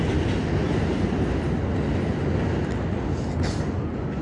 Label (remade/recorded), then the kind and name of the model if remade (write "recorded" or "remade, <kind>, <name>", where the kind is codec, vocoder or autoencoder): recorded